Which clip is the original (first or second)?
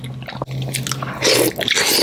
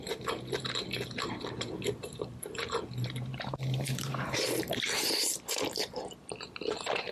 first